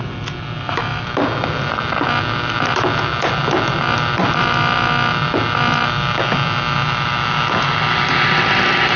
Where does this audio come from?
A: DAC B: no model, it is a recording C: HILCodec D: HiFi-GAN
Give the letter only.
B